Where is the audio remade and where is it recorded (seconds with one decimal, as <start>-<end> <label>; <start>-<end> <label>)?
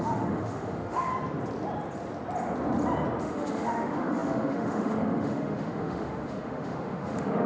0.0-1.1 remade; 1.1-3.2 recorded; 3.2-7.5 remade